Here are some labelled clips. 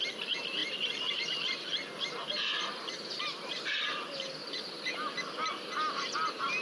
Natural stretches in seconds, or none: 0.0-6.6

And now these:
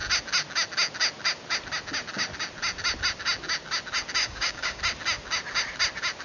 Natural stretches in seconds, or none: 0.0-4.2; 4.8-6.2

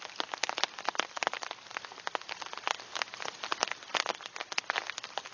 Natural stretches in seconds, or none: 0.0-5.3